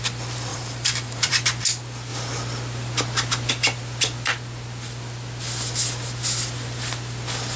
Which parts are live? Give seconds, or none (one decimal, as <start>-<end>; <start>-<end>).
0.0-0.5; 1.3-7.6